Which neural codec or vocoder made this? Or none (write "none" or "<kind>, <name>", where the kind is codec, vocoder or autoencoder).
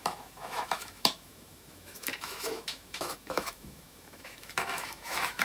autoencoder, DAC-VAE